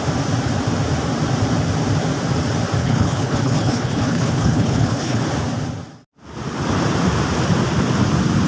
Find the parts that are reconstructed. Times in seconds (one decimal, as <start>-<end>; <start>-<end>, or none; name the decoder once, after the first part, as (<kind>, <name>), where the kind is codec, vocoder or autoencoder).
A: 2.8-5.2 (codec, HILCodec)